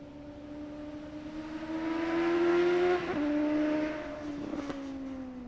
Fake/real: real